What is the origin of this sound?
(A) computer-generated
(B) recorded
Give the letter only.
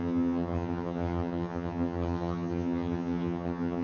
A